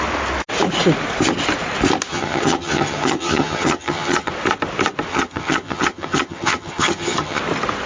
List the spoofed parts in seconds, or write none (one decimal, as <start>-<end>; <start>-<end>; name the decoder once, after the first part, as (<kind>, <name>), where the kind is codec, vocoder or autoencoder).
2.1-4.3 (vocoder, HiFi-GAN); 5.1-7.4